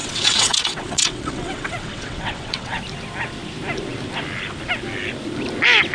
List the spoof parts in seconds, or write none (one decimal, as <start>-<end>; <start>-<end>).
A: 0.0-2.8